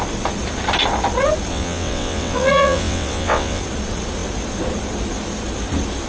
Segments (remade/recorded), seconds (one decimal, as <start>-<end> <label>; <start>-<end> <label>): 0.0-1.5 recorded; 1.5-3.6 remade; 3.6-6.1 recorded

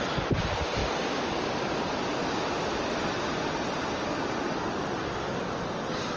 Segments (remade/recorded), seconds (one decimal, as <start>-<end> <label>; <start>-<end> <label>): 0.0-6.2 recorded

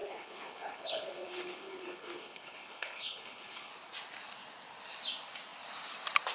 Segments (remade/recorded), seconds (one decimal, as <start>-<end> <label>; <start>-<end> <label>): 0.0-3.7 remade; 3.7-6.3 recorded

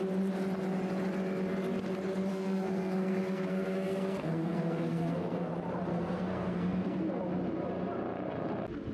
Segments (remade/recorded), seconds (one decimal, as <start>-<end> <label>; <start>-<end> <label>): 0.0-2.3 recorded; 2.3-5.5 remade; 5.5-5.9 recorded; 5.9-7.2 remade; 7.2-8.9 recorded

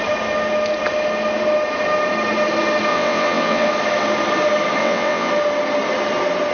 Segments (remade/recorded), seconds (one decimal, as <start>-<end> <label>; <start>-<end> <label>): 0.0-2.9 recorded; 2.9-3.7 remade; 3.7-4.8 recorded; 4.8-5.3 remade; 5.3-6.5 recorded